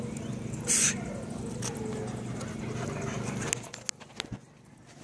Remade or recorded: recorded